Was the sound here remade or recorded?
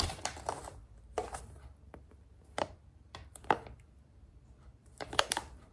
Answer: remade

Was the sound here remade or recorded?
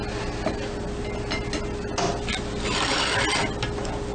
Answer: recorded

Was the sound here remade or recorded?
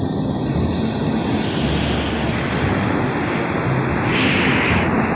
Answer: recorded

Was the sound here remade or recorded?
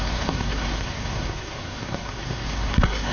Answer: remade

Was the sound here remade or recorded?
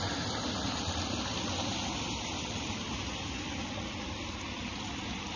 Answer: recorded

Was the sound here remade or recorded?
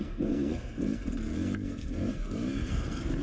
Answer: remade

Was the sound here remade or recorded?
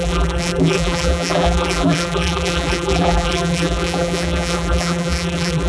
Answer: remade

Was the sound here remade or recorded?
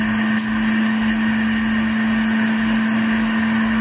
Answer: recorded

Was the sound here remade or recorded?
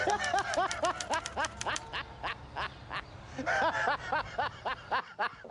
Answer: recorded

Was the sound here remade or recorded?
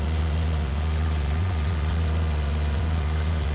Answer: remade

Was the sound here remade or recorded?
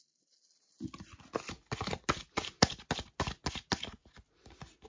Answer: recorded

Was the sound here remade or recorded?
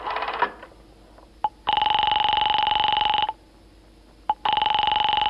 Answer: recorded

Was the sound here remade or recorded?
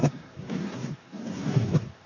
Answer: remade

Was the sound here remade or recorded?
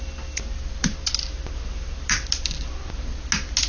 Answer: recorded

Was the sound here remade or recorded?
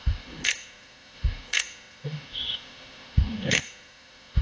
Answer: remade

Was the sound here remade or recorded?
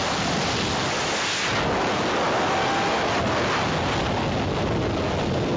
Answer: recorded